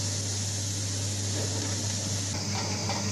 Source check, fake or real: real